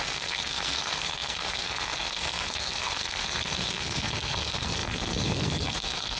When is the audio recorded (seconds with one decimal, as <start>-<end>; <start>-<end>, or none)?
none